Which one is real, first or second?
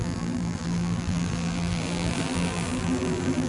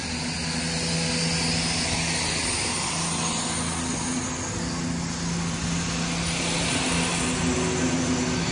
second